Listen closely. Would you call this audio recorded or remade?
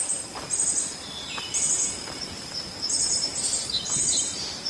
remade